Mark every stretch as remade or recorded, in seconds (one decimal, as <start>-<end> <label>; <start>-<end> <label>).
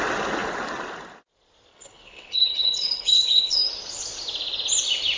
0.0-1.7 recorded; 1.7-3.6 remade; 3.6-5.2 recorded